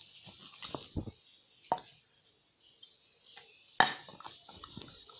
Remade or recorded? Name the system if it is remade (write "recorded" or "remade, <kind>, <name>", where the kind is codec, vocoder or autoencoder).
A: recorded